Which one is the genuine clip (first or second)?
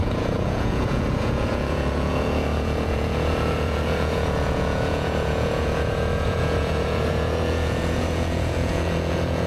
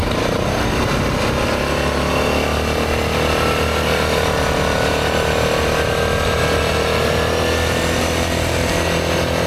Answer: second